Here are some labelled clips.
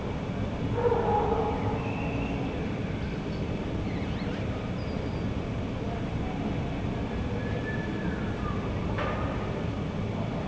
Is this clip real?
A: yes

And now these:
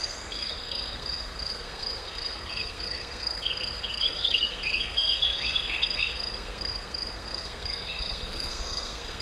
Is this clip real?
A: no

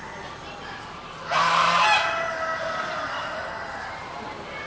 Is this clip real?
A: yes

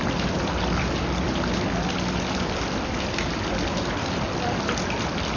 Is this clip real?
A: yes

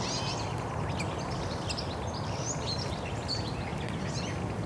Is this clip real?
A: yes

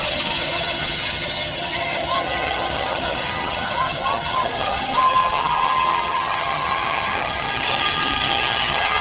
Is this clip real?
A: no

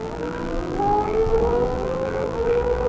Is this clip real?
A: no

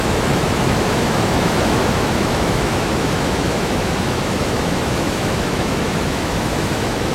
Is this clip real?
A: no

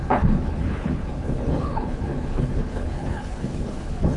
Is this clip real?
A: no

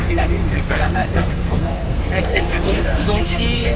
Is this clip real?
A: no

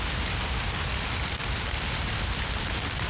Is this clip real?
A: yes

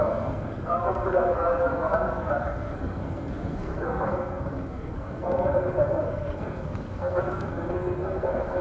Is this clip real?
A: no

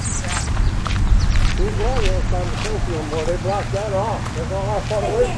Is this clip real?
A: yes